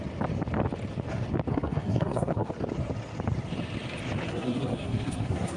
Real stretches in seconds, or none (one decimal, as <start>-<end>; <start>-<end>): 0.0-1.5; 2.5-4.3